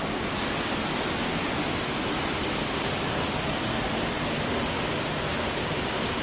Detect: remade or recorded recorded